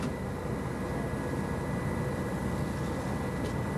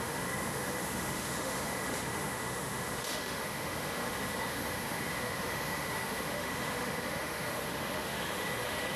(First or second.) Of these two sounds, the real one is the first